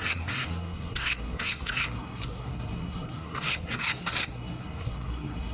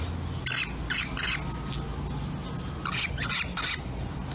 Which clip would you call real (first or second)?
second